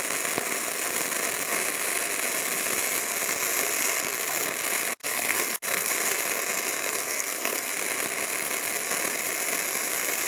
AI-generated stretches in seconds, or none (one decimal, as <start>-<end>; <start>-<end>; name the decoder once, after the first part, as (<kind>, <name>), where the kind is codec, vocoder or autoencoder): 5.0-5.9 (codec, SNAC); 6.8-7.7